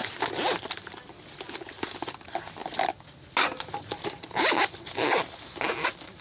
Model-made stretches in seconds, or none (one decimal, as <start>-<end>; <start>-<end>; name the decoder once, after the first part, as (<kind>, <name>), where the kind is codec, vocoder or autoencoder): none